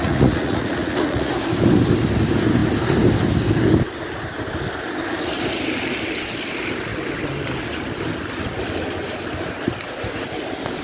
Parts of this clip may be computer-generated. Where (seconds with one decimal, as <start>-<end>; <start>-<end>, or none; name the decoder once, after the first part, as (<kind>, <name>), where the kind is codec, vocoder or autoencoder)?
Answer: 0.0-1.3 (vocoder, Vocos)